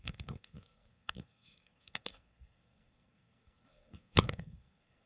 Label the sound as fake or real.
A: fake